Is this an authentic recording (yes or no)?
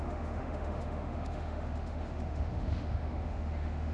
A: no